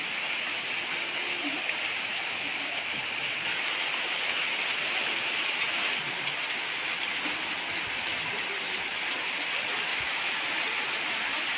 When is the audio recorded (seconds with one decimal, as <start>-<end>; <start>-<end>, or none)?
0.0-2.1; 3.0-9.9; 10.5-11.6